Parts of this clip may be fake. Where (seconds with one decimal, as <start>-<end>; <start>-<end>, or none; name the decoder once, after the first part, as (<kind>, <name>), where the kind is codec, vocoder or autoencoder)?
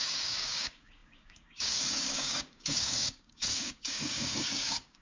0.0-5.0 (codec, DAC)